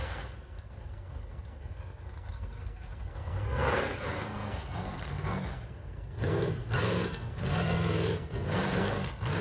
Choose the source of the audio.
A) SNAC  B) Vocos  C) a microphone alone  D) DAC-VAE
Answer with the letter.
A